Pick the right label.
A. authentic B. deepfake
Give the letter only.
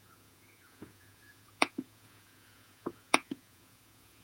B